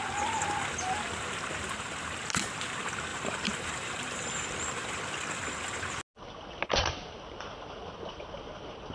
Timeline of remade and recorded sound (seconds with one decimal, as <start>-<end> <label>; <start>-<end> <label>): 0.0-3.1 recorded; 3.1-5.0 remade; 5.0-8.9 recorded